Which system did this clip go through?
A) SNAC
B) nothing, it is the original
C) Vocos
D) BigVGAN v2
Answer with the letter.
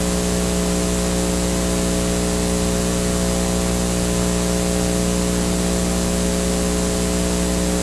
B